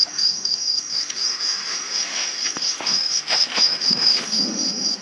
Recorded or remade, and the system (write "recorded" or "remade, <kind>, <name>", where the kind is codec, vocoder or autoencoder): remade, autoencoder, DAC-VAE